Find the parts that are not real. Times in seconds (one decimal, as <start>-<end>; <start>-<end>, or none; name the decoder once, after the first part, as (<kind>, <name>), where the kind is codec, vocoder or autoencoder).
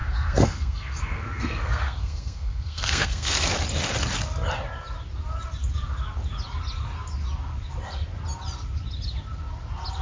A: 0.0-3.5 (codec, SNAC)